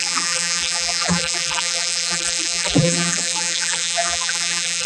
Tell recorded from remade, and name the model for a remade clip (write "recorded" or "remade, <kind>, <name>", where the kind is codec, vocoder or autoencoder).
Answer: remade, vocoder, BigVGAN v2